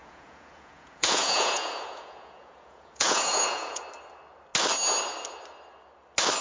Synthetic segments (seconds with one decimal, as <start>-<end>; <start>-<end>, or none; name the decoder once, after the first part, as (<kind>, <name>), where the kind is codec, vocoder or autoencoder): 0.0-3.8 (vocoder, Vocos)